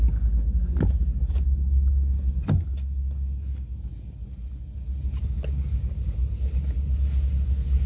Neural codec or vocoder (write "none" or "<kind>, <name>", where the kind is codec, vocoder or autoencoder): none